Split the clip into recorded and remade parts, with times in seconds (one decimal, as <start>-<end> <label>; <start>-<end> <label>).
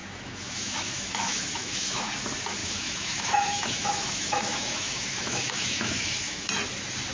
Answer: 0.0-2.1 remade; 2.1-2.6 recorded; 2.6-6.5 remade; 6.5-7.1 recorded